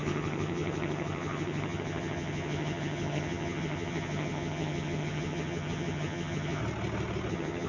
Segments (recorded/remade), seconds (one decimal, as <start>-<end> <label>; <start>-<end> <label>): 0.0-6.6 remade; 6.6-7.3 recorded; 7.3-7.7 remade